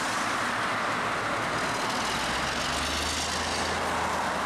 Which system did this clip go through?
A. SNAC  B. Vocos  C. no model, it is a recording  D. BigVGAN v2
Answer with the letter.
C